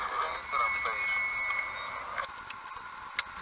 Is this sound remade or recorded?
recorded